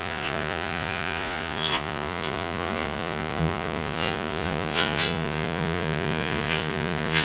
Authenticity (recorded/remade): remade